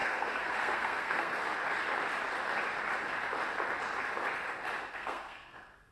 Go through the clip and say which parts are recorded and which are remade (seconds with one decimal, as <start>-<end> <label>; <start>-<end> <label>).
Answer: 0.0-1.4 remade; 1.4-4.9 recorded; 4.9-5.9 remade

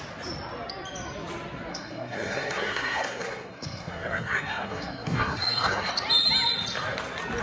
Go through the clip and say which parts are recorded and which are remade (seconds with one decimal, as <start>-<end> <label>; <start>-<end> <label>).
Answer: 0.0-1.7 recorded; 1.7-5.9 remade; 5.9-7.4 recorded

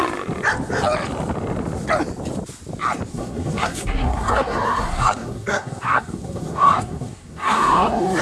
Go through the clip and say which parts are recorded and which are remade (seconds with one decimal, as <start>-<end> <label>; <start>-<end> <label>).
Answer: 0.0-3.1 recorded; 3.1-8.2 remade

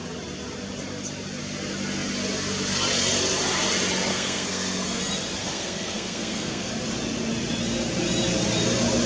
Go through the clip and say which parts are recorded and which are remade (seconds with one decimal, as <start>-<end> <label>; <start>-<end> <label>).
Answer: 0.0-4.1 recorded; 4.1-5.0 remade; 5.0-5.4 recorded; 5.4-6.7 remade; 6.7-9.1 recorded

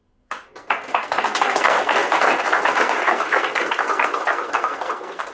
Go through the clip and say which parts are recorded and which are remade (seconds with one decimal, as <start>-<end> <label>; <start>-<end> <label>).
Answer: 0.0-5.3 remade

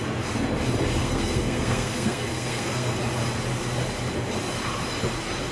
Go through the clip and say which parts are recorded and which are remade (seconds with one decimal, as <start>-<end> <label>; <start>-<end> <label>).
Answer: 0.0-1.0 recorded; 1.0-3.0 remade; 3.0-5.5 recorded